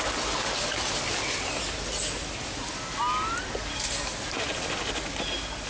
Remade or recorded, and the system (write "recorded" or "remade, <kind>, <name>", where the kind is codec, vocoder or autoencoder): recorded